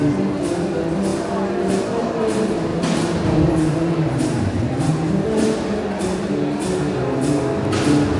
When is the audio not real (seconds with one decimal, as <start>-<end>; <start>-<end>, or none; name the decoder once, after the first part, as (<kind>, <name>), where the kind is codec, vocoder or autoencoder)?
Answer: 1.1-1.8 (vocoder, BigVGAN v2); 2.7-4.9